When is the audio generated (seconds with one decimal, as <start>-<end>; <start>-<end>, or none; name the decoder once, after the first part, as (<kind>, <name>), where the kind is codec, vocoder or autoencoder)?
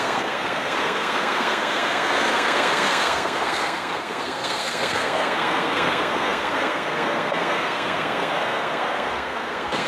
0.0-9.9 (codec, SNAC)